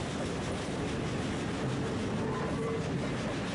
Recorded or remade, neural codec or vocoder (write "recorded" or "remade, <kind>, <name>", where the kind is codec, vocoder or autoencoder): recorded